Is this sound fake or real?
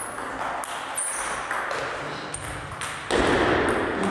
real